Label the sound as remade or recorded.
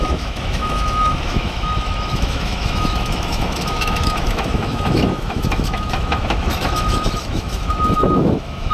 remade